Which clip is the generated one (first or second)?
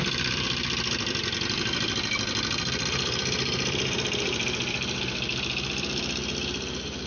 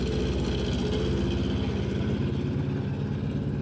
first